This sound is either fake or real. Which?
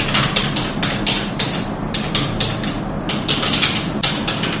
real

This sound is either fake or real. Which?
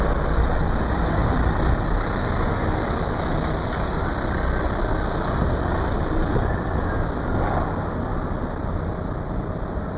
real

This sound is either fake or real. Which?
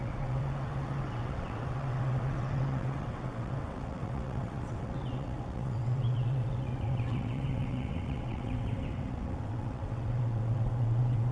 fake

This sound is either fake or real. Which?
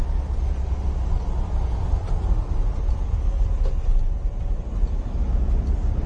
real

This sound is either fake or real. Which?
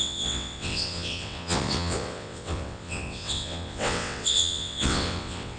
fake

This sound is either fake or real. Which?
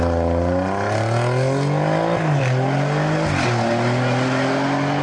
real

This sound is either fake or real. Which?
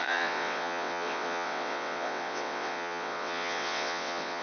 fake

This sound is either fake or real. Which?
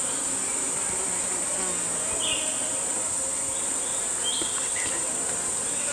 real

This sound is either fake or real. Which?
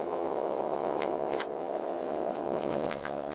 fake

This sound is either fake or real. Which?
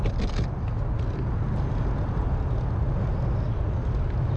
real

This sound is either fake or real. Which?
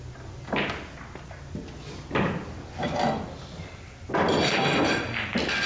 real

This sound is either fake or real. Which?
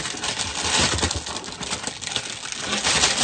real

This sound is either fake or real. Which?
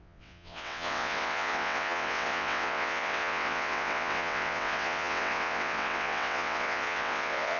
fake